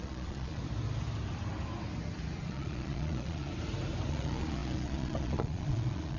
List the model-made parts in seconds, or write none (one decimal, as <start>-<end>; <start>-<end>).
0.0-0.6; 2.5-3.5; 4.1-6.2